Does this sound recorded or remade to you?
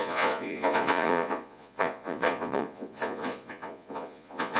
remade